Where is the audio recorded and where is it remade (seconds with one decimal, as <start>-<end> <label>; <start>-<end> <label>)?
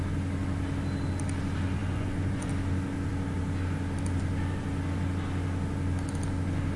0.0-1.8 recorded; 1.8-2.5 remade; 2.5-6.8 recorded